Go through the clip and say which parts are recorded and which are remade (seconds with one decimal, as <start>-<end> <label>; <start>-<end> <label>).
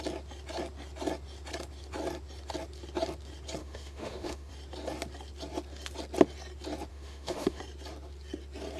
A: 0.0-3.6 recorded; 3.6-4.5 remade; 4.5-6.9 recorded; 6.9-7.6 remade; 7.6-8.8 recorded